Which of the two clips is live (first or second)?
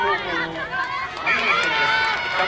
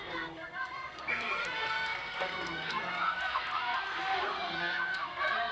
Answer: first